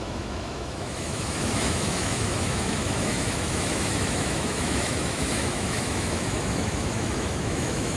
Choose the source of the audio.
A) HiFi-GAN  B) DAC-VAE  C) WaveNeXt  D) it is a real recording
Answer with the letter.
B